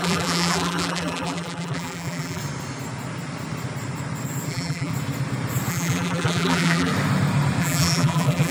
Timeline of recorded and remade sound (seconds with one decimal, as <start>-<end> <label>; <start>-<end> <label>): 0.0-2.4 remade; 2.4-4.5 recorded; 4.5-4.9 remade; 4.9-5.7 recorded; 5.7-6.9 remade; 6.9-7.6 recorded; 7.6-8.5 remade